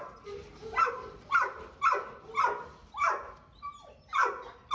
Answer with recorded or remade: recorded